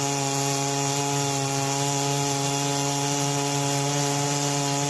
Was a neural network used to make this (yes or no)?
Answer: no